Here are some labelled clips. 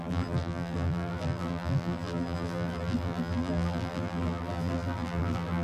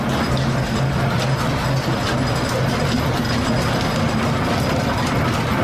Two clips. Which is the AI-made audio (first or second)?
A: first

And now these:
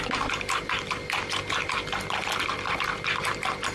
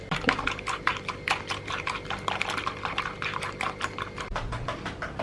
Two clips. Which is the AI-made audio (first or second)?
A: second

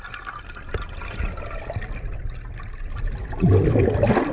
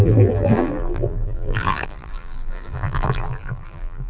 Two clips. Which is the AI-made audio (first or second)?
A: second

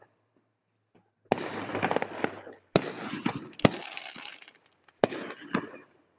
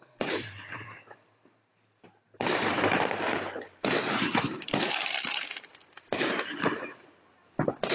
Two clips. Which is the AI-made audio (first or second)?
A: second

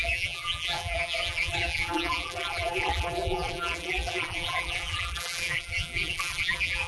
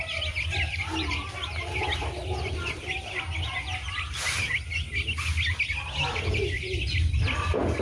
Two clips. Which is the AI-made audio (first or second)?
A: first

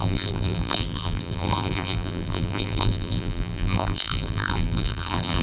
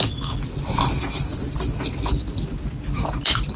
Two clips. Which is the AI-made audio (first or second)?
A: first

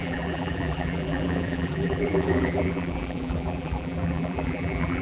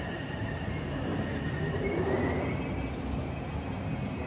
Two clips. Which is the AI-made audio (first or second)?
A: first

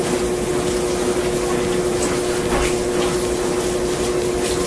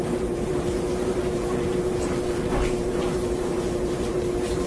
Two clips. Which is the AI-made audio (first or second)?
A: second